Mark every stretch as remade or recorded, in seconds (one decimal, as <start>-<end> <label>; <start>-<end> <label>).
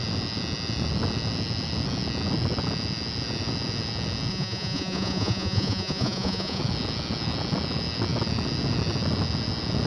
0.0-4.3 recorded; 4.3-6.6 remade; 6.6-9.9 recorded